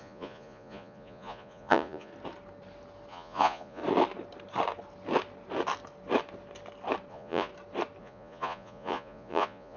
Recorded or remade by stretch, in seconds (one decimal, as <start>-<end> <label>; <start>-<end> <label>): 0.0-2.1 remade; 2.1-3.1 recorded; 3.1-3.8 remade; 3.8-7.1 recorded; 7.1-7.5 remade; 7.5-8.0 recorded; 8.0-9.8 remade